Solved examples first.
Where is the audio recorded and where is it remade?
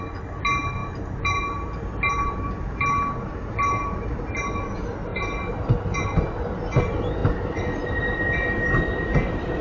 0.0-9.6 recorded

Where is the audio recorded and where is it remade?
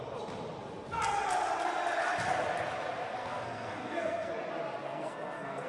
0.0-3.2 recorded; 3.2-4.3 remade; 4.3-4.8 recorded; 4.8-5.7 remade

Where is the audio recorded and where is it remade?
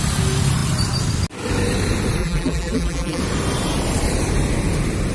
0.0-2.2 recorded; 2.2-3.2 remade; 3.2-5.1 recorded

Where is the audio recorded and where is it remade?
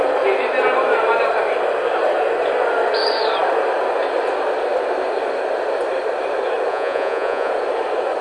0.0-6.7 recorded; 6.7-7.5 remade; 7.5-8.2 recorded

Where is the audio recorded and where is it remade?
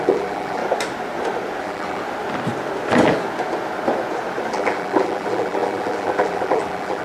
0.0-0.6 remade; 0.6-1.6 recorded; 1.6-2.0 remade; 2.0-4.5 recorded; 4.5-7.0 remade